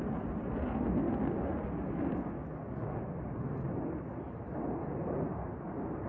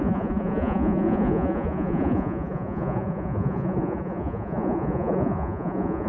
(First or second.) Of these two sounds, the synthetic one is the second